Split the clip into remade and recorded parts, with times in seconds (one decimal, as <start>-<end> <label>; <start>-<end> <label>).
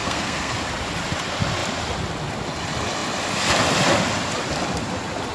0.0-0.6 remade; 0.6-5.3 recorded